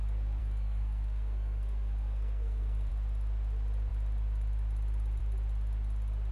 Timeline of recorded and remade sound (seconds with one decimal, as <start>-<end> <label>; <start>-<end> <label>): 0.0-0.4 recorded; 0.4-2.9 remade; 2.9-6.3 recorded

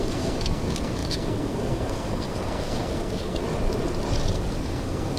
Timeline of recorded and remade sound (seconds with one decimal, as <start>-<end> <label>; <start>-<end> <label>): 0.0-3.4 remade; 3.4-4.3 recorded; 4.3-5.2 remade

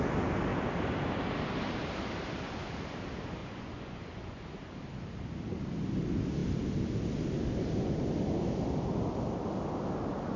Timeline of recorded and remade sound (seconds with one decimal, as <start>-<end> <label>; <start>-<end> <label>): 0.0-3.4 recorded; 3.4-4.4 remade; 4.4-10.4 recorded

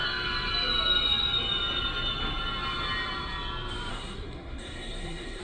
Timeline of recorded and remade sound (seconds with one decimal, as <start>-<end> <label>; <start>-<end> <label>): 0.0-3.9 recorded; 3.9-5.4 remade

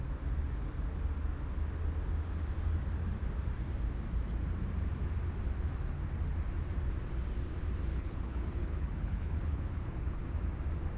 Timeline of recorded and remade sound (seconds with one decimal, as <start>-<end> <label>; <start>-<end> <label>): 0.0-7.9 recorded; 7.9-10.2 remade; 10.2-11.0 recorded

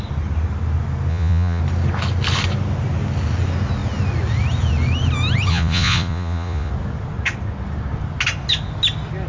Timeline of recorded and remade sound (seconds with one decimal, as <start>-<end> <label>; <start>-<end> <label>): 0.0-1.1 recorded; 1.1-1.6 remade; 1.6-5.5 recorded; 5.5-6.7 remade; 6.7-9.3 recorded

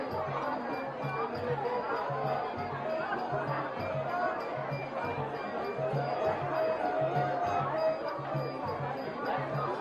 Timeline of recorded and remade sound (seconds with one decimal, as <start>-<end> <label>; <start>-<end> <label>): 0.0-9.8 recorded